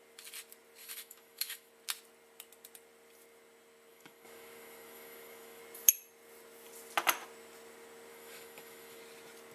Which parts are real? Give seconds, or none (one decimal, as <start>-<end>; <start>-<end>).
0.0-0.8; 1.7-3.9; 5.6-8.1; 9.0-9.5

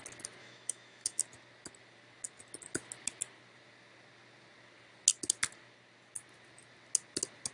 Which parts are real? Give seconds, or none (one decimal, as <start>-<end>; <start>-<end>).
0.0-0.4; 1.2-7.5

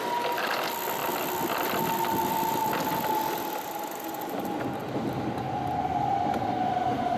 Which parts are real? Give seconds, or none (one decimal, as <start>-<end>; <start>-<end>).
0.0-7.2

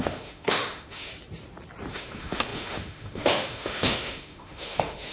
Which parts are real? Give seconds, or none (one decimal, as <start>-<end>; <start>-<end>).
1.1-1.9